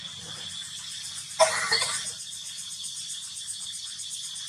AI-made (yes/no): no